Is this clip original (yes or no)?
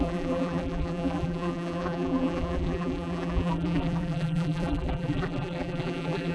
no